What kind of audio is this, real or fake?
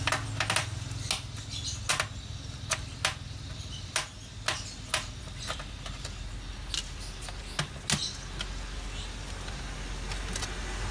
real